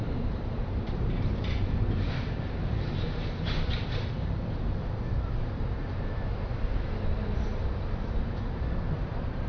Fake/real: fake